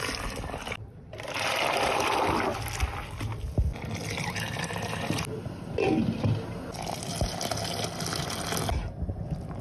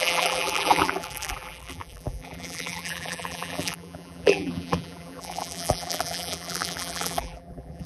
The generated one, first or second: second